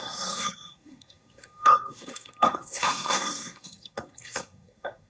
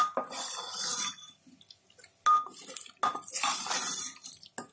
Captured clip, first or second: second